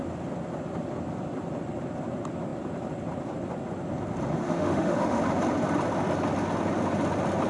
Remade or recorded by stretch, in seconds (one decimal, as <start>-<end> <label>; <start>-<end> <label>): 0.0-4.4 recorded; 4.4-5.2 remade; 5.2-7.5 recorded